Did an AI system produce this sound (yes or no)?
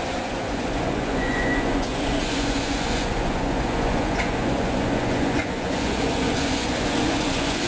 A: yes